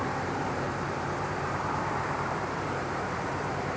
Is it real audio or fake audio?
fake